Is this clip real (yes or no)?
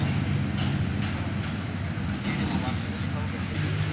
yes